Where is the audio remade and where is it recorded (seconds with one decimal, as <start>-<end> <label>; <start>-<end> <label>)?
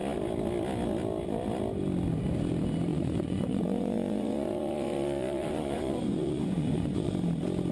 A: 0.0-2.9 recorded; 2.9-7.1 remade; 7.1-7.7 recorded